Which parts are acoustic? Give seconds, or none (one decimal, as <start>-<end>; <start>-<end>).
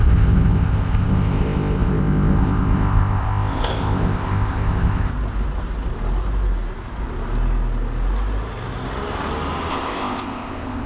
5.1-9.7